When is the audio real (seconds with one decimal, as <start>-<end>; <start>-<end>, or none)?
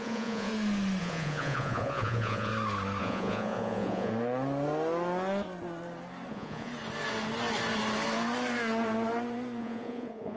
0.5-1.0; 2.5-3.0; 4.1-6.3; 6.7-9.6